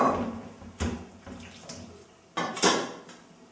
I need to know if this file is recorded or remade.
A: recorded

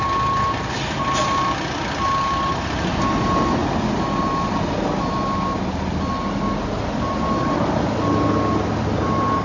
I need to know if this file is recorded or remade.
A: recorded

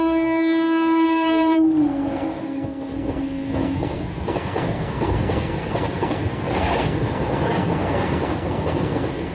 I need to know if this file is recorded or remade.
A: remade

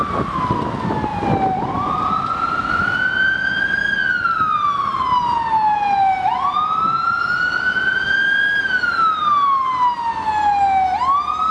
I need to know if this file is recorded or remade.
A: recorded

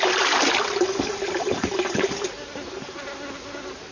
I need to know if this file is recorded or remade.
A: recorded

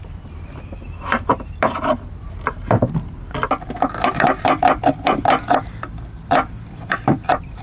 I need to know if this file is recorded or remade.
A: remade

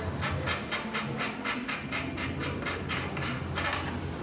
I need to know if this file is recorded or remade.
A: recorded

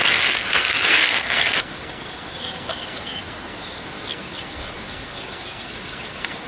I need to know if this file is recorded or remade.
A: remade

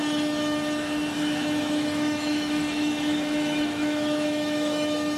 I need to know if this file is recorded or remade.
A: remade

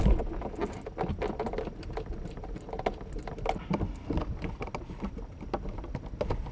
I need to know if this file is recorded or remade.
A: recorded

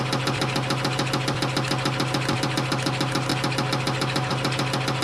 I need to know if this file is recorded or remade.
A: recorded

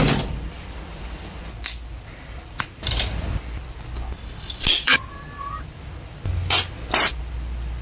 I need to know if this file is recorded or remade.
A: remade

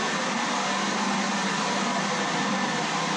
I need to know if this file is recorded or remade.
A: recorded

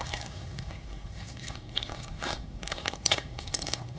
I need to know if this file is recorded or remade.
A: remade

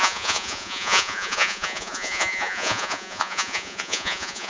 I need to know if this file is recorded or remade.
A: remade